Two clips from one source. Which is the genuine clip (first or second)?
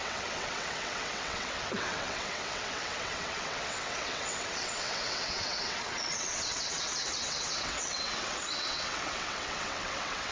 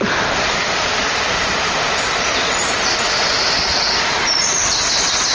second